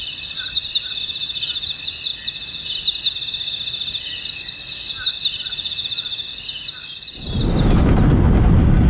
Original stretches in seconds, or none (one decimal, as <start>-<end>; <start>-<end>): 0.0-8.9